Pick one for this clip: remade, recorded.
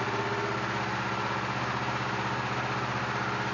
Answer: recorded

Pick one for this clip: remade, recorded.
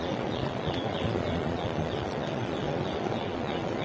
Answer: remade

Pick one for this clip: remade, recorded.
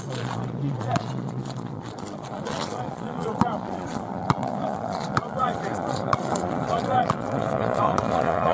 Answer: remade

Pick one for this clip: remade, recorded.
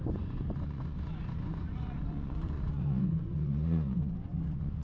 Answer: remade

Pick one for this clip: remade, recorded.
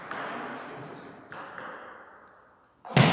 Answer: recorded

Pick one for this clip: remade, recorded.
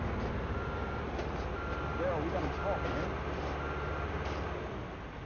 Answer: recorded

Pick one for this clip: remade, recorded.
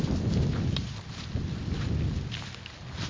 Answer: recorded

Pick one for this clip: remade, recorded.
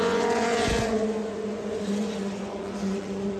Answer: remade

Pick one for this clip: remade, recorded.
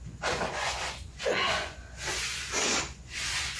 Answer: remade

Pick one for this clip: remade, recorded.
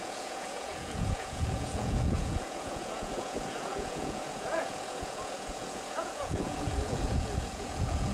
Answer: remade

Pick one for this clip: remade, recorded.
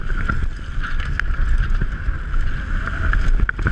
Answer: recorded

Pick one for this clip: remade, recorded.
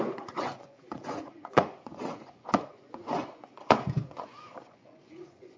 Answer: remade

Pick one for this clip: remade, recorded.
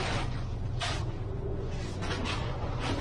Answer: remade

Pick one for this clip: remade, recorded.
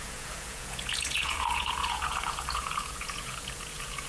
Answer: remade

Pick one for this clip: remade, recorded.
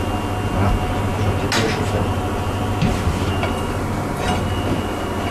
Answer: recorded